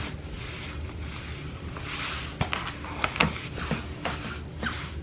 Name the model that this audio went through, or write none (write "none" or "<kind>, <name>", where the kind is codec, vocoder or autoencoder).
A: vocoder, BigVGAN v2